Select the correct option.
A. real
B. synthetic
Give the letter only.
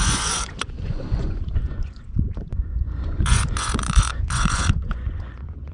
B